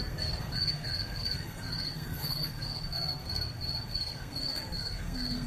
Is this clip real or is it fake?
fake